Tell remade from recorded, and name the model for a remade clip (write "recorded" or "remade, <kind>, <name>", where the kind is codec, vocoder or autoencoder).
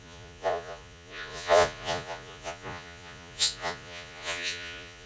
remade, vocoder, Vocos